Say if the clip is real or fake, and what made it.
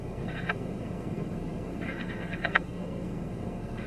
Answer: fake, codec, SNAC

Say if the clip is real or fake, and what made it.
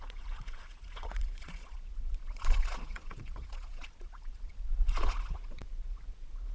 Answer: fake, vocoder, Vocos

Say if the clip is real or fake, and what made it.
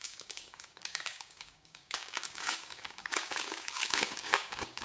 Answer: fake, codec, DAC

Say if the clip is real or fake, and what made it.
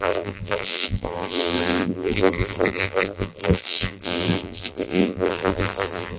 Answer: fake, vocoder, BigVGAN v2